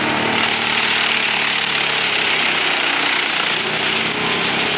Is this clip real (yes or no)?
yes